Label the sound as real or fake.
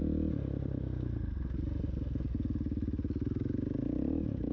real